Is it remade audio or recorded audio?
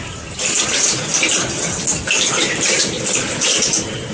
recorded